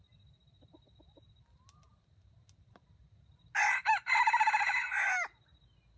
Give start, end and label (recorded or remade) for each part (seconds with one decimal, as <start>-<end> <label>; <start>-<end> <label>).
0.0-6.0 recorded